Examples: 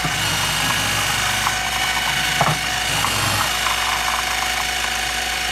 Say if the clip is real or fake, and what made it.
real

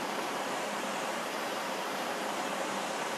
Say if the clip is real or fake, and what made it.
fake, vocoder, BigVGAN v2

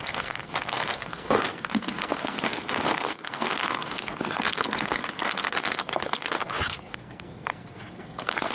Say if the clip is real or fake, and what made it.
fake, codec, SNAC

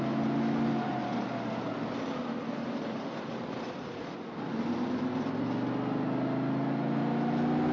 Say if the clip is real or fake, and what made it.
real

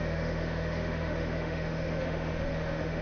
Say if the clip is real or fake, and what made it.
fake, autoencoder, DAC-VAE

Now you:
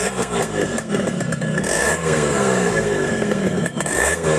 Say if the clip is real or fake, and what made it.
fake, codec, SNAC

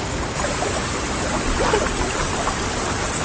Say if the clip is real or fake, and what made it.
real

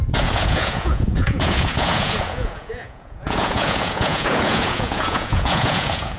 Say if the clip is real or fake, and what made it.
fake, vocoder, Vocos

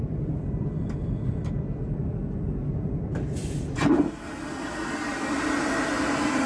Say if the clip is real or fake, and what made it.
real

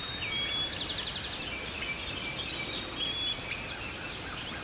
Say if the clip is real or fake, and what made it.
real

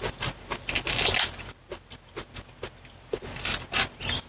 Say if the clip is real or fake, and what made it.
real